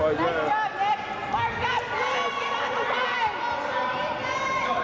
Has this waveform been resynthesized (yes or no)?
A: no